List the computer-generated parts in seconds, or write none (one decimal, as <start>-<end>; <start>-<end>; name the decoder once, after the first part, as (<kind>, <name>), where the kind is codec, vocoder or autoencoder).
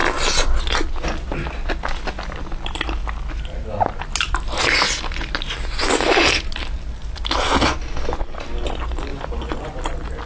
9.1-9.8 (vocoder, Vocos)